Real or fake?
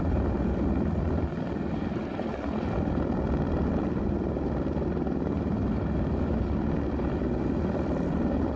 fake